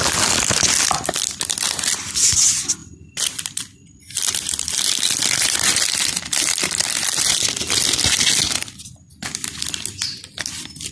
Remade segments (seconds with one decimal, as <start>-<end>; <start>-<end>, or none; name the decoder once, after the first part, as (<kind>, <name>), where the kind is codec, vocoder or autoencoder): 2.8-7.6 (vocoder, BigVGAN v2)